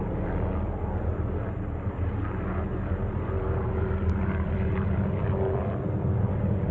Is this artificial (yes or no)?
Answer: yes